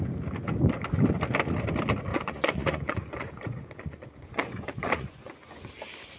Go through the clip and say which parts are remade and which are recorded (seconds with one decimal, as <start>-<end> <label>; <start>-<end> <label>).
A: 0.0-2.1 recorded; 2.1-5.7 remade; 5.7-6.2 recorded